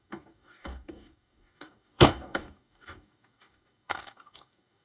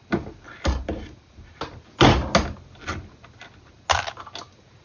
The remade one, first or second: first